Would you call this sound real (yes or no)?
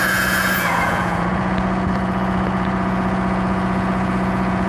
no